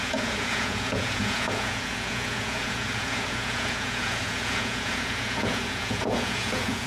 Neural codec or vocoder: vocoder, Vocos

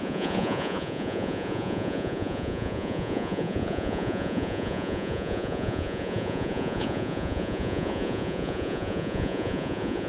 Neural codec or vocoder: vocoder, Vocos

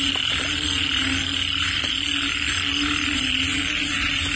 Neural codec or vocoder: none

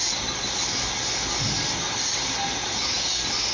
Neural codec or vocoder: none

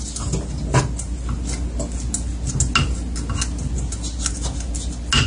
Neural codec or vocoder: none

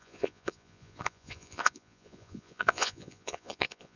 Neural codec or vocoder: vocoder, Vocos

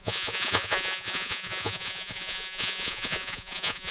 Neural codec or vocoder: vocoder, Vocos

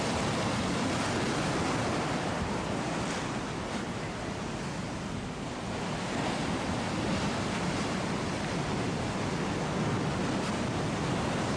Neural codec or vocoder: none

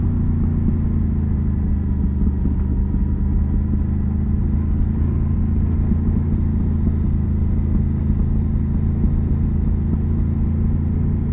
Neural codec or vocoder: none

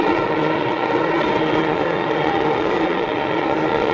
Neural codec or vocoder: vocoder, Vocos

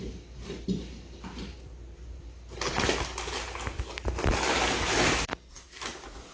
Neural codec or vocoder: none